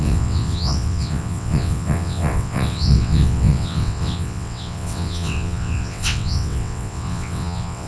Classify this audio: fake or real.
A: fake